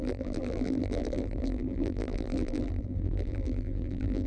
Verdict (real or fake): fake